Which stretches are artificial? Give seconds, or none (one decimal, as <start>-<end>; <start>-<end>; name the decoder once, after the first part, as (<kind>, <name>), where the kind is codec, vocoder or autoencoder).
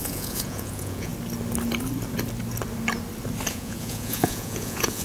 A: 0.0-1.1 (vocoder, Vocos); 3.5-5.0